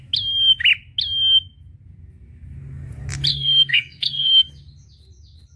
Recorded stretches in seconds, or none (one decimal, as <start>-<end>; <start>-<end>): 0.0-3.3; 4.5-5.6